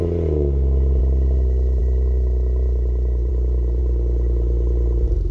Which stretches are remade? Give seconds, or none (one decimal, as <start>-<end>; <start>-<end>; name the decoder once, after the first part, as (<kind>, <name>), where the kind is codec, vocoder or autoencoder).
none